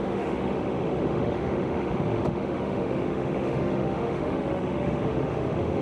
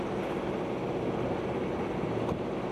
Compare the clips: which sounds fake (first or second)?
first